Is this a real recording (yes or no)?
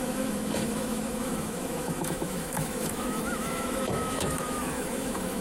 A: no